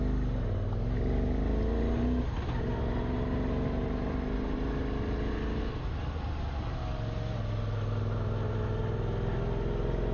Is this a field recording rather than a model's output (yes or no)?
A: yes